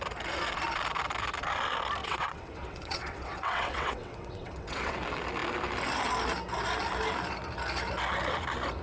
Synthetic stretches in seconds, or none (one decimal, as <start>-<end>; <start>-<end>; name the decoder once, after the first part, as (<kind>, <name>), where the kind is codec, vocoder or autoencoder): 2.0-5.0 (vocoder, WaveNeXt)